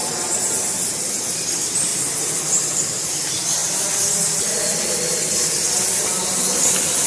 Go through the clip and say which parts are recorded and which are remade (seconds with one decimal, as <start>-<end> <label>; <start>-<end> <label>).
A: 0.0-1.9 recorded; 1.9-2.4 remade; 2.4-3.6 recorded; 3.6-5.7 remade; 5.7-7.1 recorded